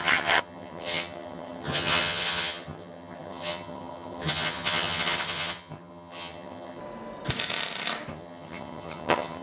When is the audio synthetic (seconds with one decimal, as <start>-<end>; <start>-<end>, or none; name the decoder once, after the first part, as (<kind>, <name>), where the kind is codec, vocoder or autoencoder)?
0.0-6.8 (vocoder, HiFi-GAN); 8.1-9.4